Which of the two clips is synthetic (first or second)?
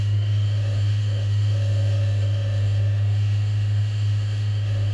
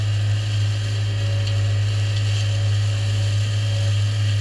first